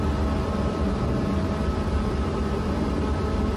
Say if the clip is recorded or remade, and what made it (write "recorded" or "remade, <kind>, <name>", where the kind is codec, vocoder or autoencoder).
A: recorded